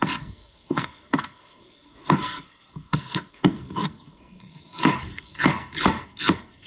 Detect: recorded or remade remade